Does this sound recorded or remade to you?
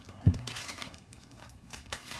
remade